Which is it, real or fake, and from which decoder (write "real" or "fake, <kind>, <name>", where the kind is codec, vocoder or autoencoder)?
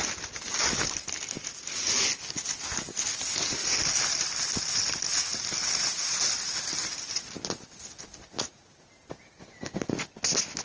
real